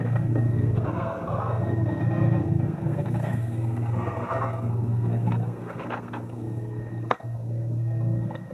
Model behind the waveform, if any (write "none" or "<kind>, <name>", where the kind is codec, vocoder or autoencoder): codec, SNAC